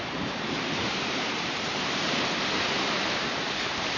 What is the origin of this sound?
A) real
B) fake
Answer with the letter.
B